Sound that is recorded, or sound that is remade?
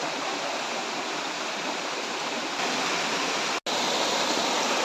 recorded